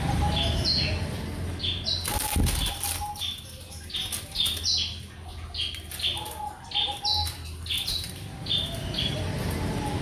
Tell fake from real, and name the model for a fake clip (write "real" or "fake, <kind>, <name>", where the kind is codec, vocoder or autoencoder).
real